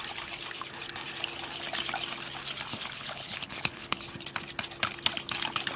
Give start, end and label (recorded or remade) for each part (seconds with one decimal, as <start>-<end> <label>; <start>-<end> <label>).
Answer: 0.0-2.7 recorded; 2.7-4.0 remade; 4.0-5.8 recorded